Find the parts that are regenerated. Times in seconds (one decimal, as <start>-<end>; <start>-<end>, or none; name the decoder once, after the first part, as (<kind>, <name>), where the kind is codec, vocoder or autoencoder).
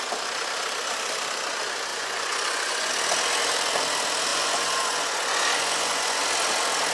1.9-2.9 (vocoder, Vocos); 4.3-6.2